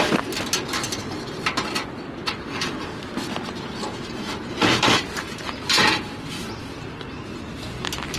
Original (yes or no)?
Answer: yes